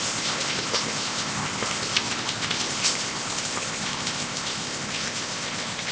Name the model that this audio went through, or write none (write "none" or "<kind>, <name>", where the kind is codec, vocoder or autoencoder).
codec, ZipCodec